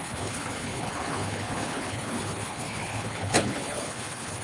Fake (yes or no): yes